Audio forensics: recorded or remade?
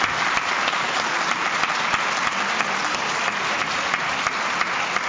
recorded